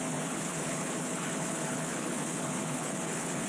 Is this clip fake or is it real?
fake